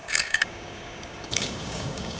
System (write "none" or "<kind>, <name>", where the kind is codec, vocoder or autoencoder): codec, DAC